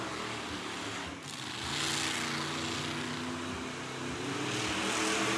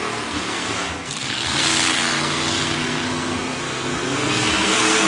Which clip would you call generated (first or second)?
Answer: second